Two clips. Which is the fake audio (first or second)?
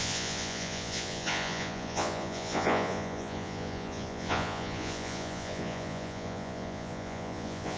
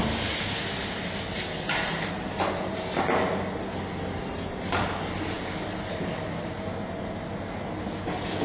first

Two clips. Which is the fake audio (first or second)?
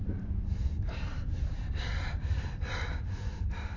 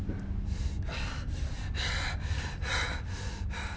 first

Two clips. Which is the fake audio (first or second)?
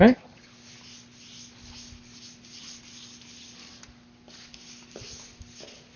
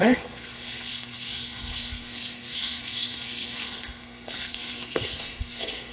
second